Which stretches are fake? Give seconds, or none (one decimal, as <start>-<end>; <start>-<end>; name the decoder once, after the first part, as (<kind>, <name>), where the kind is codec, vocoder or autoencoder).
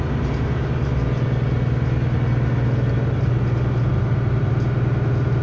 none